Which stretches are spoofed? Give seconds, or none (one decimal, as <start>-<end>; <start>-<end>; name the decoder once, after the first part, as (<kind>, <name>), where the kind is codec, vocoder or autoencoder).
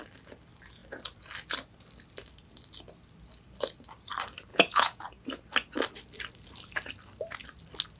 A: 4.5-5.0 (vocoder, Vocos)